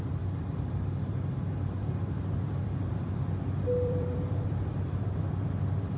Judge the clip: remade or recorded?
remade